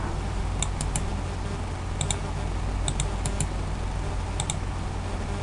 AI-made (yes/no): no